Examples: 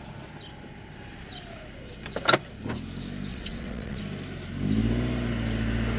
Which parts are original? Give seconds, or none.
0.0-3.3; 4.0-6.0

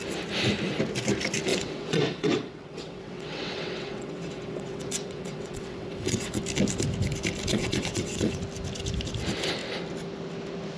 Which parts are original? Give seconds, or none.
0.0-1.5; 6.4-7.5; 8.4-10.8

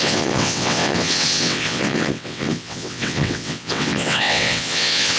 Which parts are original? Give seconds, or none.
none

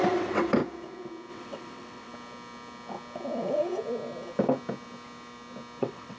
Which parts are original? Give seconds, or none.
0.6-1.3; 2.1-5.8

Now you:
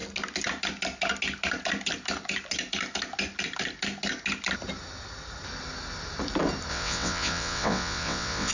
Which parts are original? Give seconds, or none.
0.0-6.7